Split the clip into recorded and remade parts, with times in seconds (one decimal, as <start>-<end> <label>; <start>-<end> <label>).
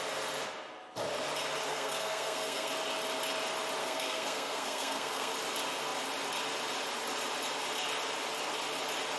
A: 0.0-1.7 recorded; 1.7-2.7 remade; 2.7-3.8 recorded; 3.8-5.3 remade; 5.3-9.2 recorded